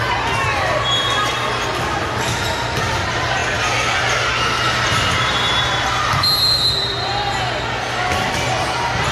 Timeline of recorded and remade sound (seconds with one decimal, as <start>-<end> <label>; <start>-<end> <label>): 0.0-9.1 recorded